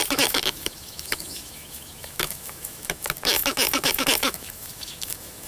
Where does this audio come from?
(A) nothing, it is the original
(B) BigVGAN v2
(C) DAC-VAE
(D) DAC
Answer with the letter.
C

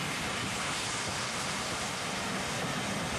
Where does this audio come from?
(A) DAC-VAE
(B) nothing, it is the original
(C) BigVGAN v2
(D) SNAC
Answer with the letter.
B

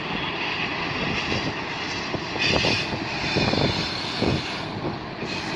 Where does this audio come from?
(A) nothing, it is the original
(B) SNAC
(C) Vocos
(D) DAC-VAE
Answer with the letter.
A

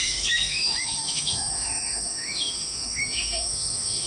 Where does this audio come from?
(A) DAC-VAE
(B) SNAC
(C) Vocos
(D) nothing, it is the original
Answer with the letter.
A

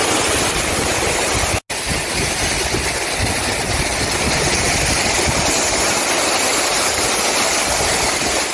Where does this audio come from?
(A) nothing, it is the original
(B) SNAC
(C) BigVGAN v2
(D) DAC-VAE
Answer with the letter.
A